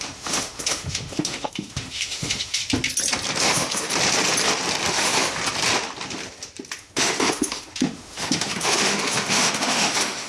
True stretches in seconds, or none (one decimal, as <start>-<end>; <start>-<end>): 2.6-3.4; 3.9-4.9; 5.4-6.8